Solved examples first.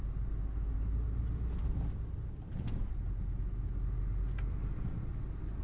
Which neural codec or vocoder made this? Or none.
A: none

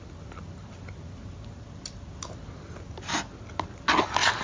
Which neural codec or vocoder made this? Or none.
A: none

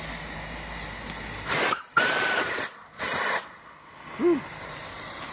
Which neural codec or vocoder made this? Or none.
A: none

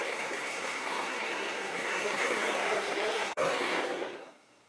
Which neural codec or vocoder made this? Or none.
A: codec, SNAC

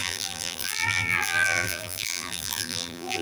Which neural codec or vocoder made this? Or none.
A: vocoder, BigVGAN v2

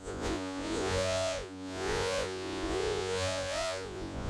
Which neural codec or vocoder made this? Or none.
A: vocoder, Vocos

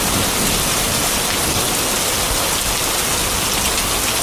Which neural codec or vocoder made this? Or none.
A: none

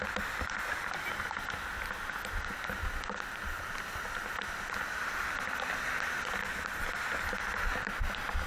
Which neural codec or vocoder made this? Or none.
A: none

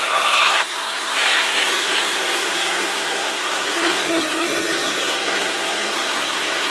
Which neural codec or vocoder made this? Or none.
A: codec, SNAC